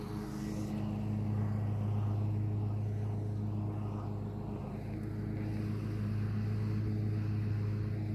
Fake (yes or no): no